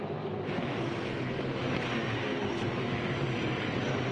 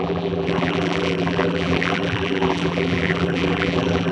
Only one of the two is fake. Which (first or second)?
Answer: second